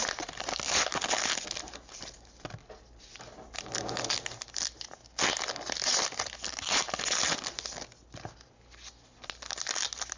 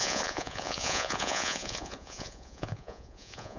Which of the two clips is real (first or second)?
first